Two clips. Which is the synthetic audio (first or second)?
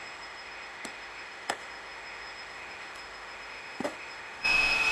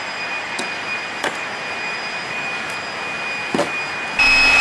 first